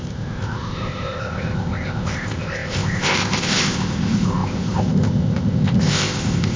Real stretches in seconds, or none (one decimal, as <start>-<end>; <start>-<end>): none